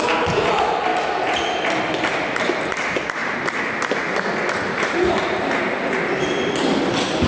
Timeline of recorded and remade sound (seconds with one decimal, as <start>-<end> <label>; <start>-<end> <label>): 0.0-7.3 recorded